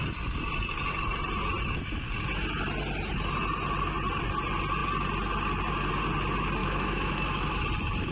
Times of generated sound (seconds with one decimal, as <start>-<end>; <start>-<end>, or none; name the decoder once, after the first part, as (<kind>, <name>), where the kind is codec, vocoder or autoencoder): 6.6-7.6 (autoencoder, DAC-VAE)